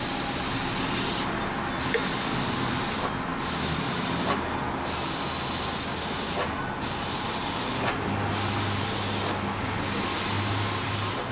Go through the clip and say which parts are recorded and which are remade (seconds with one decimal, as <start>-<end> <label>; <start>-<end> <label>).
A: 0.0-11.3 recorded